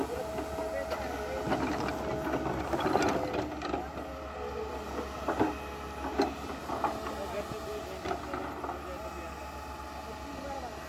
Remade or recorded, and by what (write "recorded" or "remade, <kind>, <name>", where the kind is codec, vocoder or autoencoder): recorded